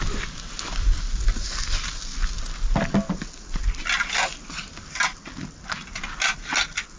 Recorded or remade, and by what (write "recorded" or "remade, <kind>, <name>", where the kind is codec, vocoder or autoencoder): recorded